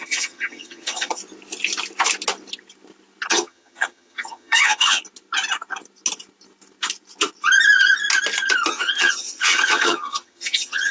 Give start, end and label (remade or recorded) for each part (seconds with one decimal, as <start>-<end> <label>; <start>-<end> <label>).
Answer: 0.0-1.2 remade; 1.2-3.3 recorded; 3.3-5.0 remade; 5.0-8.7 recorded; 8.7-10.9 remade